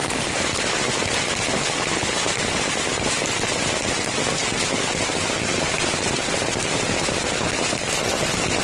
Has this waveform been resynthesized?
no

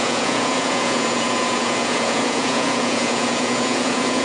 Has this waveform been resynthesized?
yes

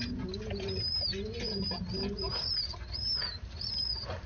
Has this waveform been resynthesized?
no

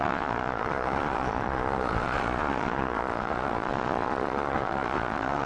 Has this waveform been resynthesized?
yes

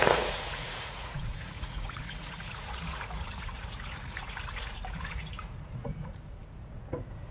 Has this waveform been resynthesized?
yes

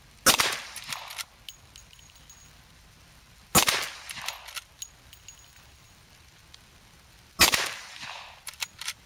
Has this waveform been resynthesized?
no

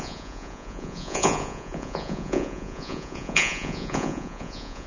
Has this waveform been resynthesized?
yes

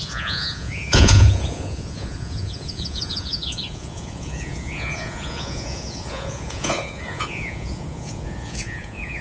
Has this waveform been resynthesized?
yes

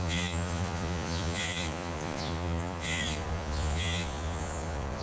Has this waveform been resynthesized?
yes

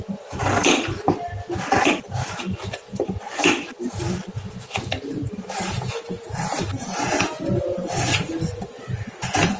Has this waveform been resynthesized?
no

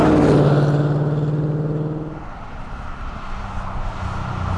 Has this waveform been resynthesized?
no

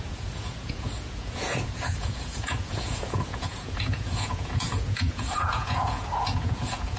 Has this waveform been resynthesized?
yes